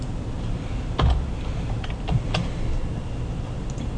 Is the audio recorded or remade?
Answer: recorded